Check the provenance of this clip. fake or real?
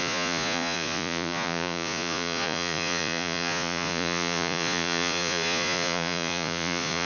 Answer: fake